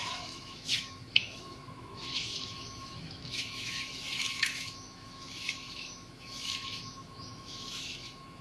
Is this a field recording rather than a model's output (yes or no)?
no